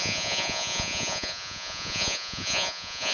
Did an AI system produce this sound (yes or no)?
yes